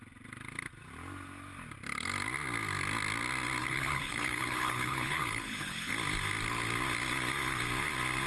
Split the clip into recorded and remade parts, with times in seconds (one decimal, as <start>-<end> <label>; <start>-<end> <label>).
0.0-3.6 recorded; 3.6-5.9 remade; 5.9-8.3 recorded